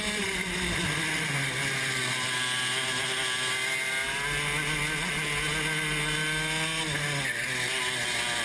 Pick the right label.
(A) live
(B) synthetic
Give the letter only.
A